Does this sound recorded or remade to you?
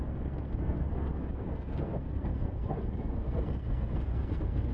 remade